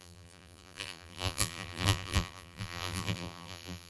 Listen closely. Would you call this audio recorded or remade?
remade